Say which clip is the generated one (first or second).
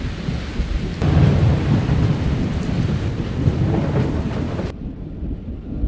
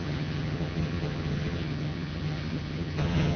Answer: second